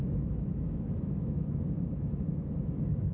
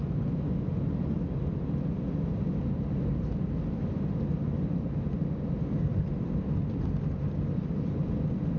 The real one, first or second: second